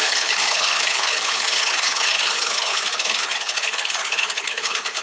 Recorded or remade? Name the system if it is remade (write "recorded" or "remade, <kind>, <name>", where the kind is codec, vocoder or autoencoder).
remade, codec, HILCodec